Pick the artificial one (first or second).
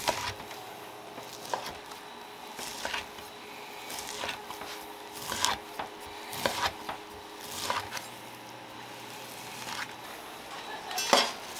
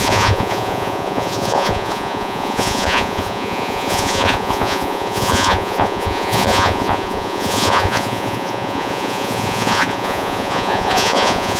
second